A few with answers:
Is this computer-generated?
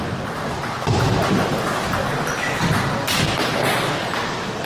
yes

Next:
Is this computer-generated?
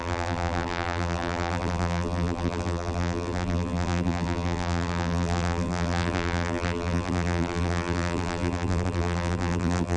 yes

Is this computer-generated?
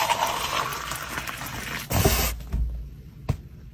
no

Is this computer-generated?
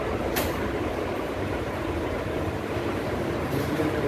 yes